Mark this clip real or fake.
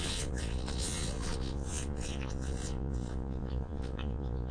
fake